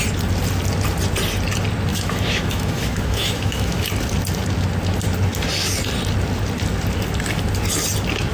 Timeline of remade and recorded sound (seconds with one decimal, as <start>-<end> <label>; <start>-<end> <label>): 0.0-1.9 recorded; 1.9-3.9 remade; 3.9-8.3 recorded